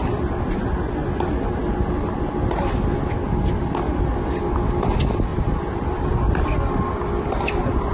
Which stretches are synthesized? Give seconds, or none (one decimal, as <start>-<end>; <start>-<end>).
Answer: 5.3-6.1